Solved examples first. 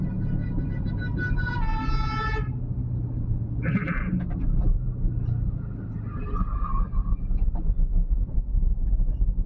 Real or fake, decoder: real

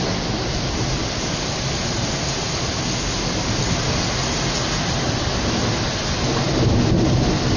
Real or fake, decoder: real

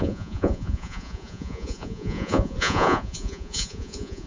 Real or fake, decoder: fake, vocoder, Vocos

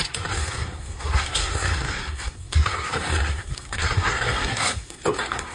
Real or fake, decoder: fake, codec, SNAC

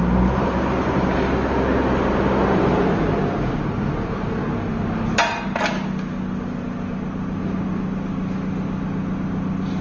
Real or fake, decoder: real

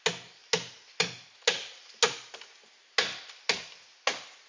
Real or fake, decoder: real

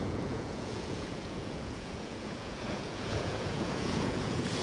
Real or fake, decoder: fake, vocoder, Vocos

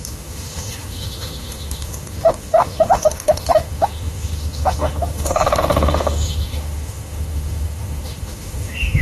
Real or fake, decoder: fake, autoencoder, DAC-VAE